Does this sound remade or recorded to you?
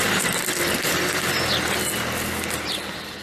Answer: recorded